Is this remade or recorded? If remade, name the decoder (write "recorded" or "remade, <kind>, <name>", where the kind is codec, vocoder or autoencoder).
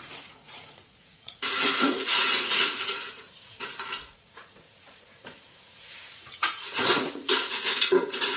remade, vocoder, Vocos